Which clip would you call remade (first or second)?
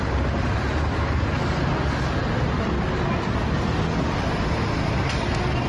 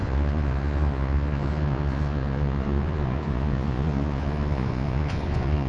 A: second